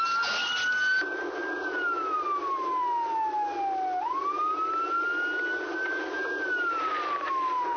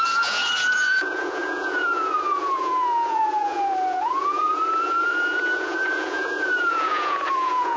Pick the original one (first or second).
first